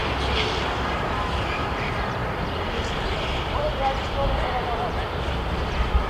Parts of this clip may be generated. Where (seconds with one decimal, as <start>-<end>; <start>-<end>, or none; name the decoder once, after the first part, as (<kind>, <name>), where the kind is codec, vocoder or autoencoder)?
0.9-2.2 (vocoder, BigVGAN v2); 4.5-6.1